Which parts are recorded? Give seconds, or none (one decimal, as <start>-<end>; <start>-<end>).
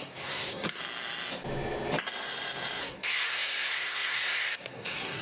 0.8-2.8